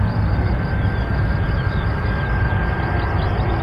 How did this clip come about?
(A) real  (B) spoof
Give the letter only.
A